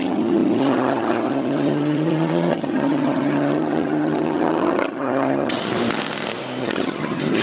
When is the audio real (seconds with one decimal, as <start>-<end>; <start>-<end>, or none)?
5.7-6.6